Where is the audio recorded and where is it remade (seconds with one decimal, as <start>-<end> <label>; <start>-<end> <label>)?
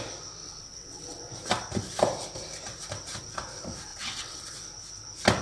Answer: 0.0-0.4 recorded; 0.4-1.3 remade; 1.3-3.9 recorded; 3.9-4.5 remade; 4.5-5.4 recorded